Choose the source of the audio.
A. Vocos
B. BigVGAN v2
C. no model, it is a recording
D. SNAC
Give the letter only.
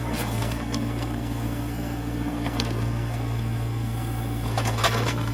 D